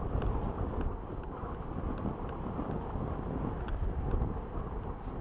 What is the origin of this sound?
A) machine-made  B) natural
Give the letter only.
B